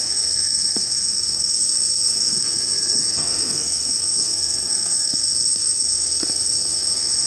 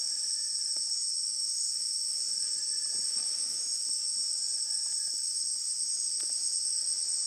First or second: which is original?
second